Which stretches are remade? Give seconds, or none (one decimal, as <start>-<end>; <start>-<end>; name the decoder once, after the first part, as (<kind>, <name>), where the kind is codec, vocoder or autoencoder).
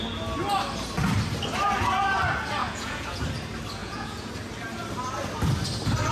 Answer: 2.6-3.2 (vocoder, Vocos); 3.8-4.3